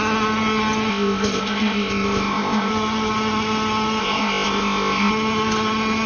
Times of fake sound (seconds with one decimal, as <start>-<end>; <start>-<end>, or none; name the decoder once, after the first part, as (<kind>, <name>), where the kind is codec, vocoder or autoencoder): 0.9-2.7 (codec, ZipCodec); 4.0-5.1